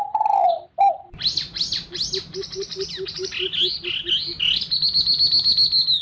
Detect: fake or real real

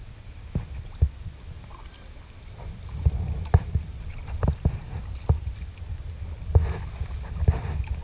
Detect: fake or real fake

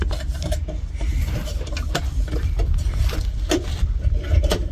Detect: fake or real real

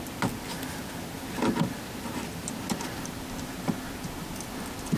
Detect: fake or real real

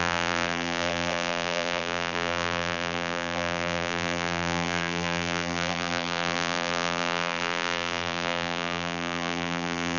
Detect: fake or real fake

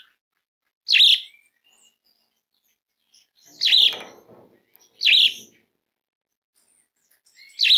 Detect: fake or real real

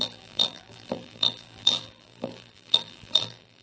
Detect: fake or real fake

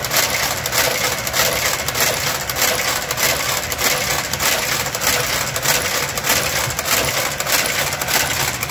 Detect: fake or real real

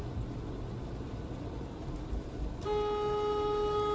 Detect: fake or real real